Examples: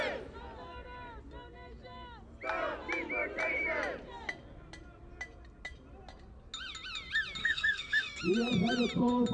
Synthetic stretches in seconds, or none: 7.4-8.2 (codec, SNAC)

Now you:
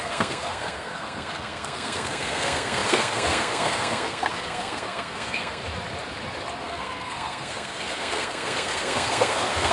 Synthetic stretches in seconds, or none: 0.0-5.6 (codec, SNAC); 6.6-9.7

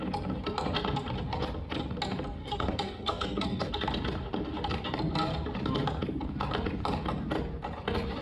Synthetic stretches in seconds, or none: 2.4-3.7 (codec, SNAC)

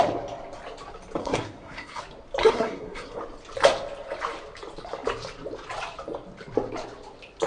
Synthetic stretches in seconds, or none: 1.2-2.0 (codec, SNAC); 2.4-3.2

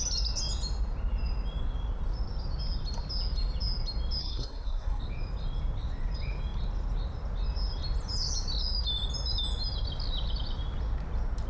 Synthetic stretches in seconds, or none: 4.2-5.0 (codec, SNAC)

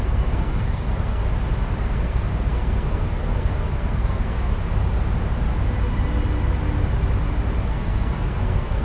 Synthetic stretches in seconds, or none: 0.0-1.2 (codec, SNAC); 1.8-4.5; 7.7-8.8